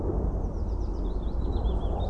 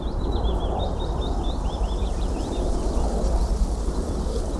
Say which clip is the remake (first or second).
second